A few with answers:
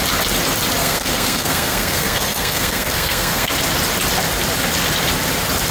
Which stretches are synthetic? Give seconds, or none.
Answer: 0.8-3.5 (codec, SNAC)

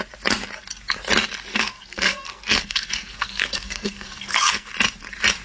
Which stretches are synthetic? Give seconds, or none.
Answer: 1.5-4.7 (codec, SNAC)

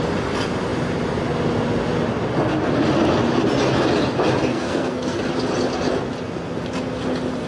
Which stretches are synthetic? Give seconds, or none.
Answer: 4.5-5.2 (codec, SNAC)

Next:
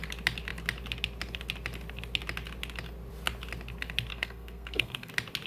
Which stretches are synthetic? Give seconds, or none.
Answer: 4.1-5.1 (codec, SNAC)

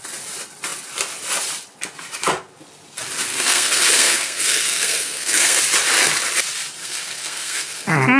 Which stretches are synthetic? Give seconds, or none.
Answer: 3.3-5.6 (codec, SNAC); 6.8-8.2

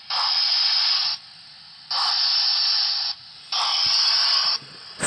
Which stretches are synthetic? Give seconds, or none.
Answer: none

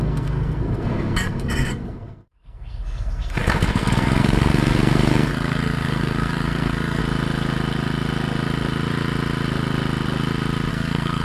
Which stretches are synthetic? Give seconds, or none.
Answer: 0.0-7.0 (codec, SNAC); 10.7-11.2

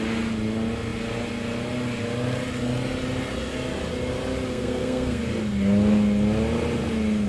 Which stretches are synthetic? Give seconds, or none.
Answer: 4.5-5.2 (codec, SNAC)